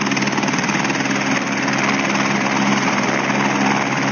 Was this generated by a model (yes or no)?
no